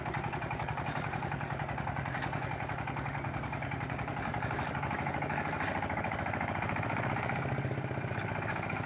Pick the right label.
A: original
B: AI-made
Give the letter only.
B